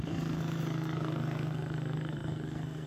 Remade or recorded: remade